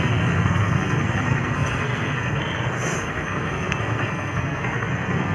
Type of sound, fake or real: fake